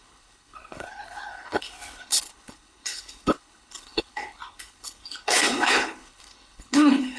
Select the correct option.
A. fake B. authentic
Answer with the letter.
A